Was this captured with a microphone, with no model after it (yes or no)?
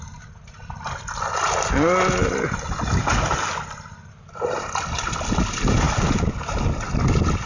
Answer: yes